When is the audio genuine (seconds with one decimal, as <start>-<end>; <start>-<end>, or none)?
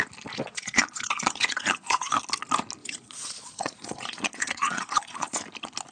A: 0.0-0.4; 2.2-2.8; 5.4-5.9